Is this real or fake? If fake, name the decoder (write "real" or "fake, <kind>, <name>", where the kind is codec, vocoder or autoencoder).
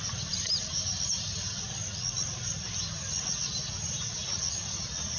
real